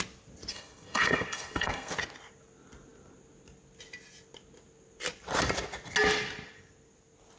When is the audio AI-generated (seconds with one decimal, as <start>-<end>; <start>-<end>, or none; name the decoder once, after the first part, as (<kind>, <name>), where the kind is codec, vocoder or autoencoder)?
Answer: 0.5-1.9 (codec, SNAC)

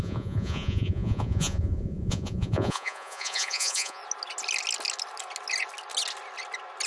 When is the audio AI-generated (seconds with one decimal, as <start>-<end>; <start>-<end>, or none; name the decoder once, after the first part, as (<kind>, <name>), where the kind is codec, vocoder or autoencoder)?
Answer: 0.0-4.0 (vocoder, Vocos)

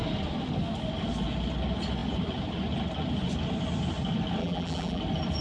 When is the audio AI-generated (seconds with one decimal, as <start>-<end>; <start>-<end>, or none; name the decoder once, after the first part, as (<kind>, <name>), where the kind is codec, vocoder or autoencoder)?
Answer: 4.4-5.0 (vocoder, BigVGAN v2)

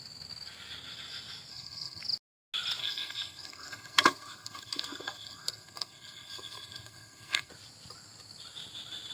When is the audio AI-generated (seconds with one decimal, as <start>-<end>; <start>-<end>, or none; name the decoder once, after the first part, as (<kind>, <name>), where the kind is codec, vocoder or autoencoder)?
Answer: 1.5-2.0 (codec, SNAC); 2.8-7.5

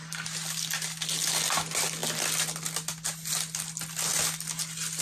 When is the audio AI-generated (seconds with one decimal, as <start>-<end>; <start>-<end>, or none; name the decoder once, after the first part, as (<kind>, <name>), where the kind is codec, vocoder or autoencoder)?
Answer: none

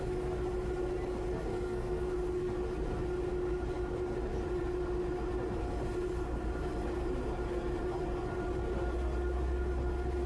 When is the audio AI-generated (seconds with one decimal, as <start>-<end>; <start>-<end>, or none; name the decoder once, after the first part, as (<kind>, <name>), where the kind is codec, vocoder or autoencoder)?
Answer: 1.5-2.1 (codec, SNAC)